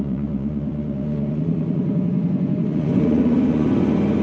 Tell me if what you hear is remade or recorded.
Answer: remade